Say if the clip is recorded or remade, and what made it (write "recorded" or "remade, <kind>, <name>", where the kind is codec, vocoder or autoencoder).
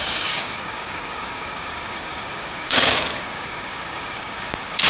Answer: remade, codec, DAC